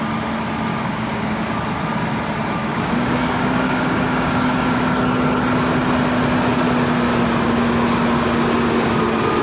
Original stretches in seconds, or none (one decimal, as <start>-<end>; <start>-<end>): 0.0-0.7; 1.6-2.6; 4.8-9.4

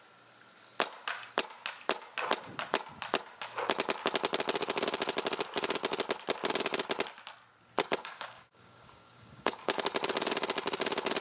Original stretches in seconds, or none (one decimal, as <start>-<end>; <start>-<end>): 0.0-8.0; 9.8-11.2

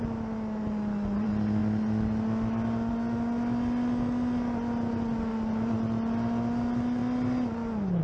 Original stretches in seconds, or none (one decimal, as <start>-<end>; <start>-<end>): 0.0-8.0